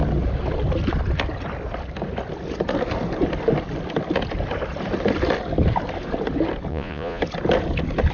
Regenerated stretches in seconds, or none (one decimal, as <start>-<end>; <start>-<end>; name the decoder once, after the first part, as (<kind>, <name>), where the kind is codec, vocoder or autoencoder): 6.7-7.2 (vocoder, Vocos)